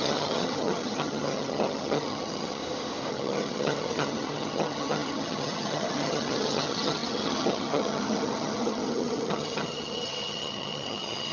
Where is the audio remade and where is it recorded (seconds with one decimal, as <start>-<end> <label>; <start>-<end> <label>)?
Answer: 0.0-2.6 remade; 2.6-3.1 recorded; 3.1-11.3 remade